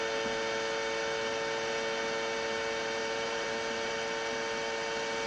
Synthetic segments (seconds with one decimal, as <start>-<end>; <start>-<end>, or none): 3.0-3.9